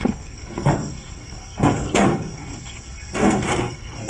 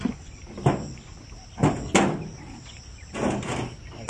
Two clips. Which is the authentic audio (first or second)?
second